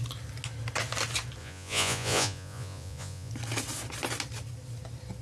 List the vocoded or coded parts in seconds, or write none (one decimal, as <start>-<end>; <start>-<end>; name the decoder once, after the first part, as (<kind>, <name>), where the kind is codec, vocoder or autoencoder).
1.4-3.3 (vocoder, Vocos)